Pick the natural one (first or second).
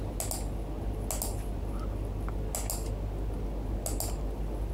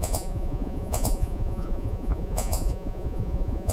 first